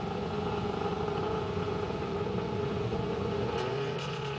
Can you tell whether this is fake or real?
fake